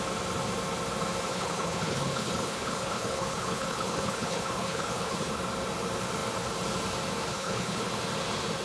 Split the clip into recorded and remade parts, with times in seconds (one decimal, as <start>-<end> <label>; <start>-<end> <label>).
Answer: 0.0-1.3 recorded; 1.3-5.3 remade; 5.3-7.3 recorded; 7.3-7.9 remade; 7.9-8.6 recorded